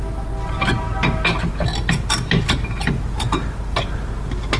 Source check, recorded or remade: recorded